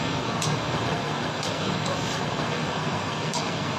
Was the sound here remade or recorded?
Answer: remade